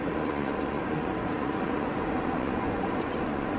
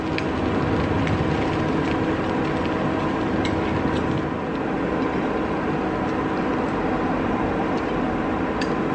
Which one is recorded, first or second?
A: second